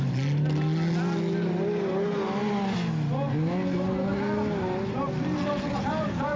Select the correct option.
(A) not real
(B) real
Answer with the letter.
B